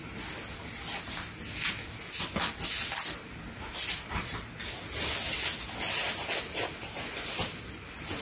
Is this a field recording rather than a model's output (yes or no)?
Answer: yes